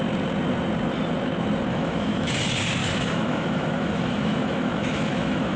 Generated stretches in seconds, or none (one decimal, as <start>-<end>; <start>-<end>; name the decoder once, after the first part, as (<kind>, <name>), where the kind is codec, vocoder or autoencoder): 1.7-2.3 (autoencoder, DAC-VAE); 2.8-5.6